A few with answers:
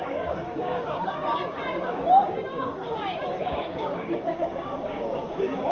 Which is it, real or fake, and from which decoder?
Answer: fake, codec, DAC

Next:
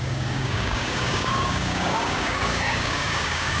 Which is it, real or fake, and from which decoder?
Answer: fake, codec, DAC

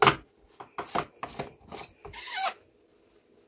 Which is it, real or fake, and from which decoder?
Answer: real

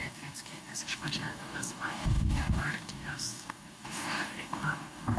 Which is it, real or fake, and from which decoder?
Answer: fake, codec, DAC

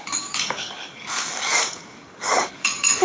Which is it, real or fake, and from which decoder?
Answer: fake, codec, DAC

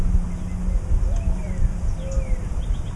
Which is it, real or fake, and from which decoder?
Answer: real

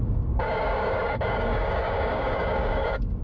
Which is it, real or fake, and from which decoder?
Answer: fake, codec, DAC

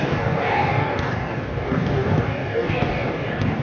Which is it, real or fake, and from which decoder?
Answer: fake, codec, DAC